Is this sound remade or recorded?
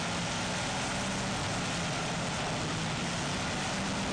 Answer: recorded